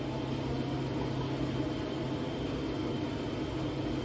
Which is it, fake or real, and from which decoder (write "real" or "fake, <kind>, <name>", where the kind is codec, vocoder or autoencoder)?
real